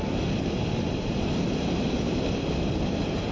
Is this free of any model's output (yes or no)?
yes